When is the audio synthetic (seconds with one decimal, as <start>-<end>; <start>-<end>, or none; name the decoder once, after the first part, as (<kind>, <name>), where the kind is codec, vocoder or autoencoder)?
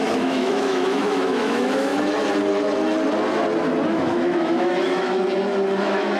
0.0-1.9 (autoencoder, DAC-VAE); 3.9-5.2; 5.8-6.2